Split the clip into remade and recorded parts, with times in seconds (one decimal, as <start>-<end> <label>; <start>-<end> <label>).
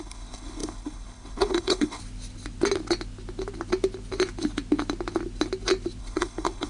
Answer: 0.0-2.0 remade; 2.0-6.0 recorded; 6.0-6.7 remade